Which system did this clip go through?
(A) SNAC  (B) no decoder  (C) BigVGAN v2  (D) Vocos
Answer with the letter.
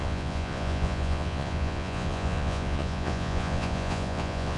D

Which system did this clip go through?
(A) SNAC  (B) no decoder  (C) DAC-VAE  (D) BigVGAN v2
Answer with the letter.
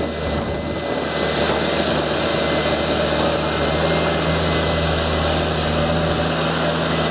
B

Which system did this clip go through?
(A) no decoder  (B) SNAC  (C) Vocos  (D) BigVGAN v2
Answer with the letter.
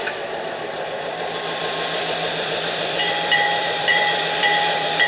D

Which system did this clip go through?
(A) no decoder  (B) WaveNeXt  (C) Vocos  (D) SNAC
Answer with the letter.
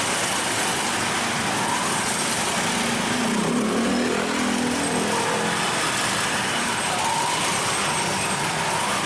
A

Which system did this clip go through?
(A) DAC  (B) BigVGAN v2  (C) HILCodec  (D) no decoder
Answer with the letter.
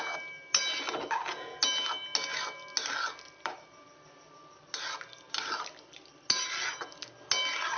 D